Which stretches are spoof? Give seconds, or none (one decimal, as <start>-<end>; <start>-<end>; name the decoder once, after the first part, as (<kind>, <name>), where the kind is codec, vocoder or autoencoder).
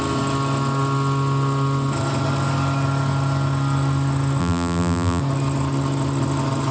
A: 4.4-5.2 (vocoder, BigVGAN v2)